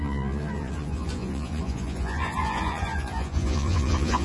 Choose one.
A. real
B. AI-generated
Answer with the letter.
B